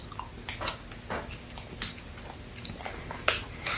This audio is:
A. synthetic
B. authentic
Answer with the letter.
B